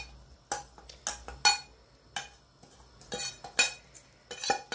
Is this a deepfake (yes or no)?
no